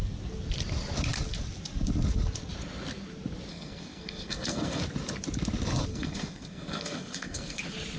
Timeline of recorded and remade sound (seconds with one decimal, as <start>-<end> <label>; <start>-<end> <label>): 0.0-3.5 recorded; 3.5-4.8 remade; 4.8-5.9 recorded; 5.9-7.6 remade; 7.6-8.0 recorded